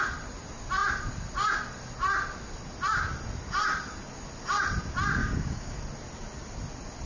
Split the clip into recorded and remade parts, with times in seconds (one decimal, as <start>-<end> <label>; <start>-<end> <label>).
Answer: 0.0-5.2 recorded; 5.2-5.8 remade; 5.8-7.1 recorded